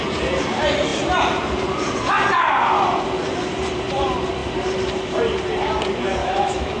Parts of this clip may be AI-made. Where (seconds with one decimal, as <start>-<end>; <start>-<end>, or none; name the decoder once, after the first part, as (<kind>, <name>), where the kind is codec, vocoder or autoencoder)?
6.2-6.8 (autoencoder, DAC-VAE)